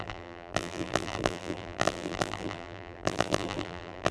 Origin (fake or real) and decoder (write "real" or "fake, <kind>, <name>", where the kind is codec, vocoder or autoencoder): fake, vocoder, BigVGAN v2